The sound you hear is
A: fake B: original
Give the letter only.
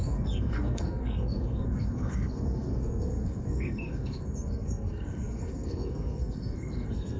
A